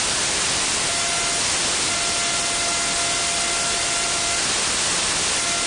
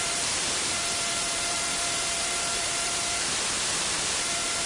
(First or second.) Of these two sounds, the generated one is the second